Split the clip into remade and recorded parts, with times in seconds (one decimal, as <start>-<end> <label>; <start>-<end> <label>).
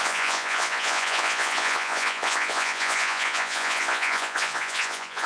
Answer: 0.0-5.3 remade